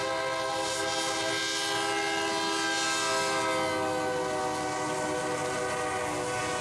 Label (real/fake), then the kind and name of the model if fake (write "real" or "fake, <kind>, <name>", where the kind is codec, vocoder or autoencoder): real